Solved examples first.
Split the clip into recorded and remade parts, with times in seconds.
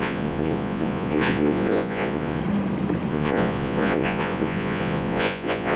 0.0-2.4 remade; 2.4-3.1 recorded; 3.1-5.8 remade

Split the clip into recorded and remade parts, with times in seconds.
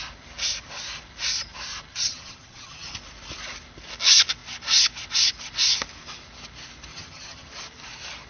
0.0-1.9 recorded; 1.9-2.9 remade; 2.9-6.9 recorded; 6.9-7.5 remade; 7.5-8.3 recorded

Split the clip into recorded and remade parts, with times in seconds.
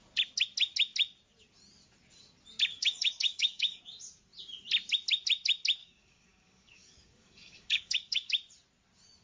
0.0-2.7 recorded; 2.7-3.8 remade; 3.8-5.8 recorded; 5.8-8.3 remade; 8.3-9.2 recorded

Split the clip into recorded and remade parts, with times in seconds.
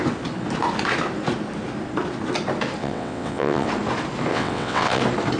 0.0-2.8 recorded; 2.8-3.7 remade; 3.7-4.3 recorded; 4.3-5.0 remade; 5.0-5.4 recorded